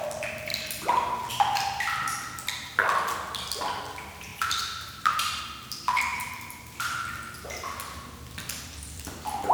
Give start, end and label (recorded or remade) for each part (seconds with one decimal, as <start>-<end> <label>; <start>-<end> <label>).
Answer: 0.0-4.3 recorded; 4.3-5.4 remade; 5.4-6.1 recorded; 6.1-6.7 remade; 6.7-9.5 recorded